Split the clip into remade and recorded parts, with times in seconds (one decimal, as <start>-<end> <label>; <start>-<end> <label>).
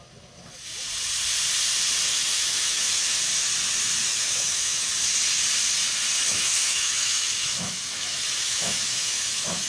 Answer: 0.0-2.1 recorded; 2.1-3.2 remade; 3.2-4.1 recorded; 4.1-4.9 remade; 4.9-6.3 recorded; 6.3-9.7 remade